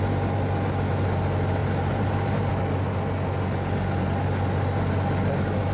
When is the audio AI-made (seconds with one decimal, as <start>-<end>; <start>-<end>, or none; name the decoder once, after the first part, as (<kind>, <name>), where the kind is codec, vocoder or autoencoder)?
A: 1.6-2.5 (vocoder, BigVGAN v2)